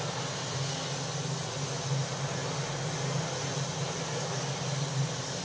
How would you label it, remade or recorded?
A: recorded